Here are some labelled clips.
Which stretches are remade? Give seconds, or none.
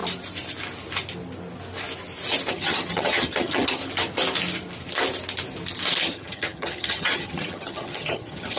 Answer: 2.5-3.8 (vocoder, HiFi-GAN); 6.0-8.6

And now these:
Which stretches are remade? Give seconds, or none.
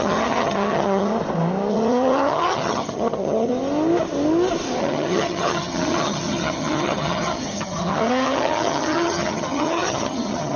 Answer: 0.0-1.1 (vocoder, HiFi-GAN); 1.7-3.5; 4.8-10.6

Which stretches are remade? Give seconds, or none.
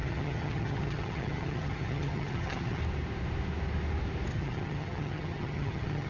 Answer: 0.0-2.8 (vocoder, HiFi-GAN); 4.3-6.1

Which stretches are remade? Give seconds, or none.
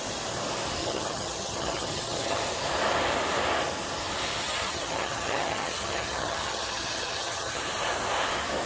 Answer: 0.8-2.4 (vocoder, HiFi-GAN); 4.4-7.6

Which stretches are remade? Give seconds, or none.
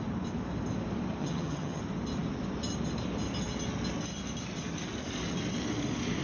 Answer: 1.2-1.8 (vocoder, HiFi-GAN)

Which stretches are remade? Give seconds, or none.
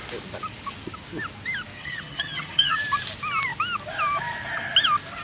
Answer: 1.8-2.8 (vocoder, HiFi-GAN)